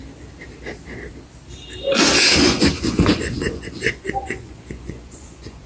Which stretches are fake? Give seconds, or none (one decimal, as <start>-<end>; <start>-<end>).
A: 2.4-5.7